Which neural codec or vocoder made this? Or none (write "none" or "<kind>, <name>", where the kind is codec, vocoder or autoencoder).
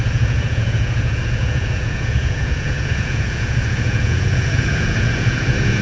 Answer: vocoder, Vocos